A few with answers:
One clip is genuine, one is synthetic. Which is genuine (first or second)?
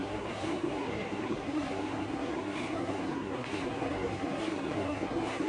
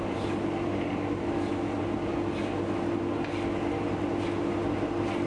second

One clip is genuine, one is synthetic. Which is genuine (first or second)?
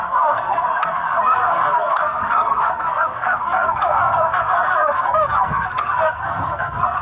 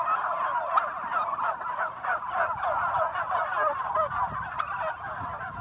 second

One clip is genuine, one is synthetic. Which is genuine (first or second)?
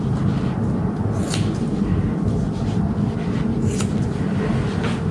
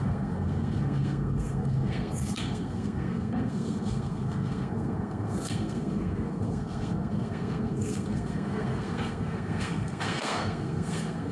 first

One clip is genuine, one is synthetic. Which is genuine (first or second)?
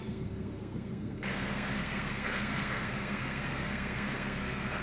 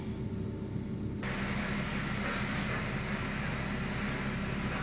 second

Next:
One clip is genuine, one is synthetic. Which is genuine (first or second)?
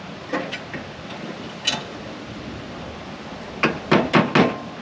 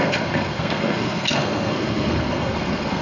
first